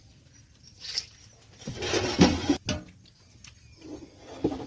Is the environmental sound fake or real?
real